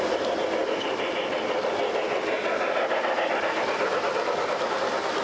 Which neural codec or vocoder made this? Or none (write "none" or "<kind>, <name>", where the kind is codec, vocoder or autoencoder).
none